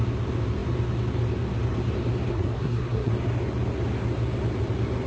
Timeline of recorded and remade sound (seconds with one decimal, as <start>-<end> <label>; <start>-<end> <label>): 0.0-2.3 recorded; 2.3-3.1 remade; 3.1-5.1 recorded